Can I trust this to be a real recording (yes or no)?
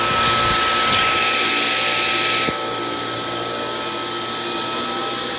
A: yes